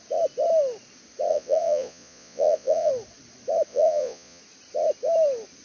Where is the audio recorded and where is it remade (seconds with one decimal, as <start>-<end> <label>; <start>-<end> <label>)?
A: 0.0-1.3 recorded; 1.3-2.9 remade; 2.9-3.7 recorded; 3.7-4.4 remade; 4.4-5.6 recorded